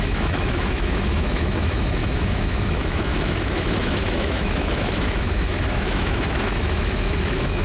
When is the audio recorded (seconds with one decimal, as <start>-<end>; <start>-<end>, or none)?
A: none